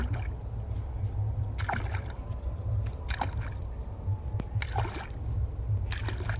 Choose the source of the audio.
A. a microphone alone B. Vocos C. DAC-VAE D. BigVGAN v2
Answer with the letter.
A